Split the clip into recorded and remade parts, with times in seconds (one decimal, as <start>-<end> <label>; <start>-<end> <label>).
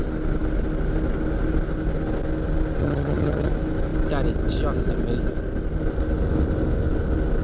0.0-2.8 recorded; 2.8-3.5 remade; 3.5-7.4 recorded